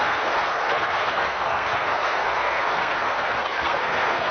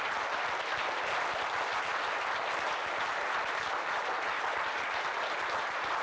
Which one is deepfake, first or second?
first